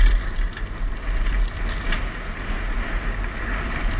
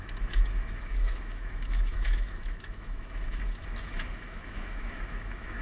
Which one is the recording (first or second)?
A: first